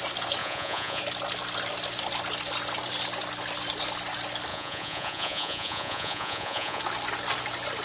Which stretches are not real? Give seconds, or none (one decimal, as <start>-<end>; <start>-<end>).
0.4-1.0; 4.5-6.8